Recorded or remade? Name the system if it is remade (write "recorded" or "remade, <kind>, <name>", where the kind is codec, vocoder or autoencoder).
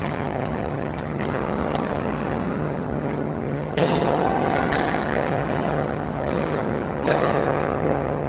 remade, vocoder, HiFi-GAN